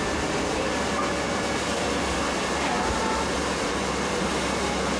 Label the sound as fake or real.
real